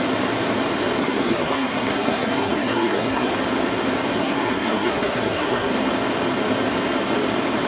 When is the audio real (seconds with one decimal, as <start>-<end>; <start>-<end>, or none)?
0.0-1.0; 3.3-4.2; 5.7-7.7